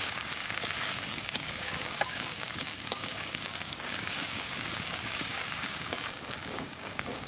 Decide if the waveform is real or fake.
fake